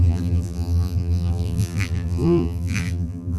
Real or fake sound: fake